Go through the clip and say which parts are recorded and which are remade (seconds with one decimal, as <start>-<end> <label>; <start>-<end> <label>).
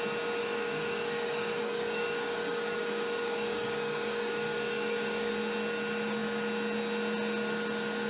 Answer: 0.0-0.4 recorded; 0.4-5.3 remade; 5.3-8.1 recorded